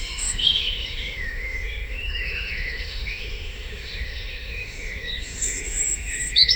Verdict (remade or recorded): remade